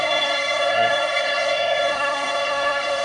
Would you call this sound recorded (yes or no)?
no